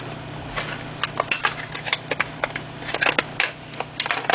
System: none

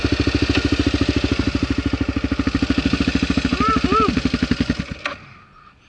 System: none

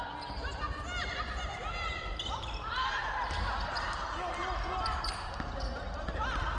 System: none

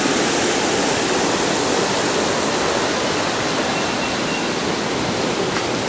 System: none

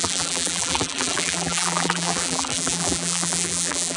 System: vocoder, BigVGAN v2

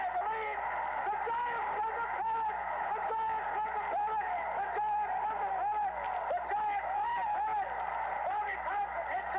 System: none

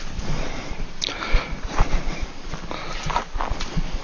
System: vocoder, BigVGAN v2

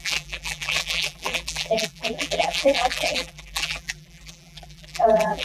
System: vocoder, BigVGAN v2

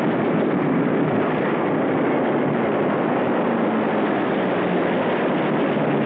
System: none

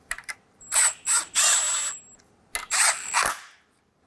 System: none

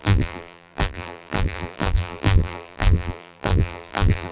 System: vocoder, BigVGAN v2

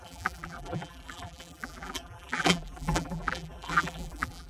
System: vocoder, BigVGAN v2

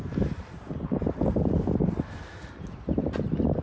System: none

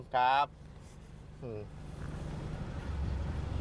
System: vocoder, BigVGAN v2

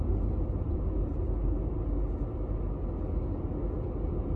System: none